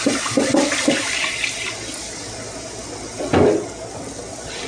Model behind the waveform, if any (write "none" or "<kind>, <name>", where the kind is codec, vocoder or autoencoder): none